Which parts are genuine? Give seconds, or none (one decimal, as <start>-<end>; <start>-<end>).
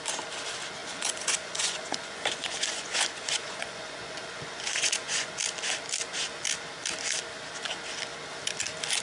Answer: 0.0-0.8; 5.4-9.0